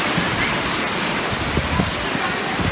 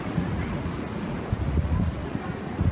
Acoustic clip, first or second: first